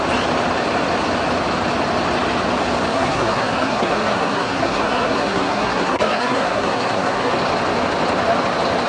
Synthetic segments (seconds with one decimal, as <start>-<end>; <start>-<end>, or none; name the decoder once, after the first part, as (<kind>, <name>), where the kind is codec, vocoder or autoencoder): 2.9-7.3 (codec, SNAC)